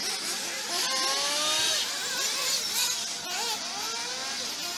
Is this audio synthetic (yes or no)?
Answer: no